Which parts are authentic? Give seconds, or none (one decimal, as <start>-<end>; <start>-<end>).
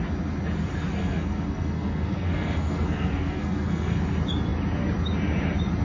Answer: 0.0-1.0; 4.0-5.8